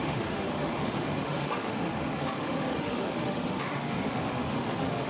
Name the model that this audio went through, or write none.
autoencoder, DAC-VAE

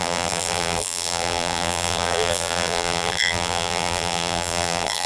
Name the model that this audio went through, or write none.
vocoder, BigVGAN v2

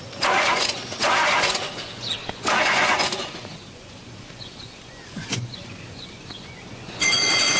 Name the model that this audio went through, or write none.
vocoder, Vocos